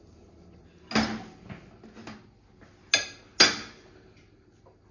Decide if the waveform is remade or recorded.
recorded